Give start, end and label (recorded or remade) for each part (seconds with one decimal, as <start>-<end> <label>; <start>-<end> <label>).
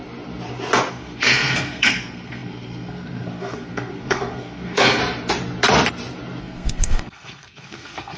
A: 0.0-0.9 recorded; 0.9-5.0 remade; 5.0-6.4 recorded; 6.4-8.2 remade